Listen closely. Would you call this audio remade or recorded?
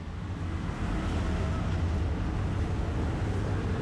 recorded